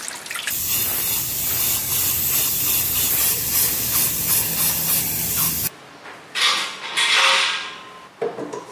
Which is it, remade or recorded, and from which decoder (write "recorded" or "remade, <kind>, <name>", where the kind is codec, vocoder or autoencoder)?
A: recorded